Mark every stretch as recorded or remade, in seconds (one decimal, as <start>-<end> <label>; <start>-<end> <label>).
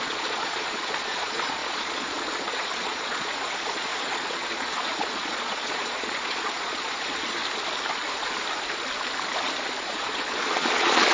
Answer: 0.0-7.4 remade; 7.4-9.8 recorded; 9.8-11.1 remade